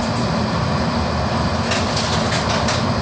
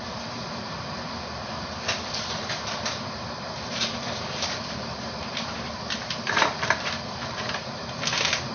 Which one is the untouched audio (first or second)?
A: first